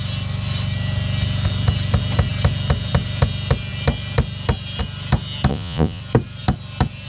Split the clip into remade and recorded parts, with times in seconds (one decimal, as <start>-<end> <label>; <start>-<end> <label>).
0.0-5.5 recorded; 5.5-6.0 remade; 6.0-7.1 recorded